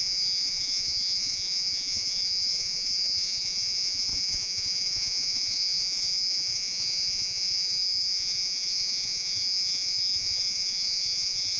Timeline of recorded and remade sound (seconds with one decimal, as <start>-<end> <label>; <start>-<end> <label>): 0.0-11.6 remade